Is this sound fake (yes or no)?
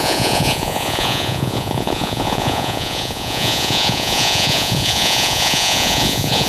yes